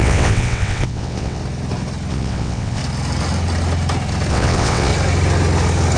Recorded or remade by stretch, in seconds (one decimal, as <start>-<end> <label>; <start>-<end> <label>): 0.0-1.4 remade; 1.4-2.1 recorded; 2.1-2.8 remade; 2.8-4.3 recorded; 4.3-4.9 remade; 4.9-6.0 recorded